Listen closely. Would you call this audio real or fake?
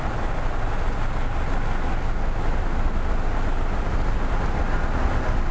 real